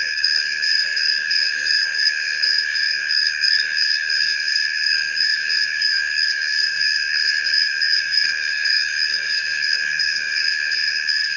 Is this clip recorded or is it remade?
remade